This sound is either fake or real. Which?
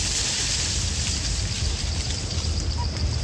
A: real